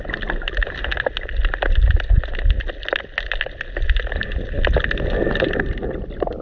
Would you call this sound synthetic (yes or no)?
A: no